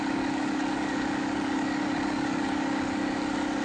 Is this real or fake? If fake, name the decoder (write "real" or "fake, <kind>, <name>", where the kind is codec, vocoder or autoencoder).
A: fake, codec, DAC